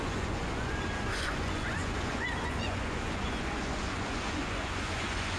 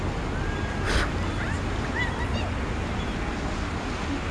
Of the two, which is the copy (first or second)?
first